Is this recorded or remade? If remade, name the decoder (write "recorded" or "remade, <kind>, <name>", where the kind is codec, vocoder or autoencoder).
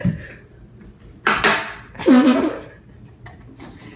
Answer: recorded